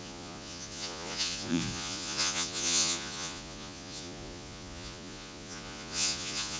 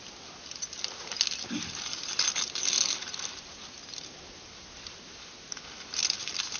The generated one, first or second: first